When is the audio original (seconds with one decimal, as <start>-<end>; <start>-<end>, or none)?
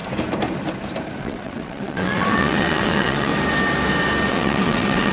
0.0-1.2; 3.3-4.3